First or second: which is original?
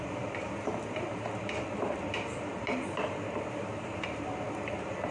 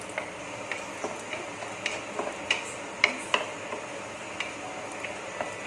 second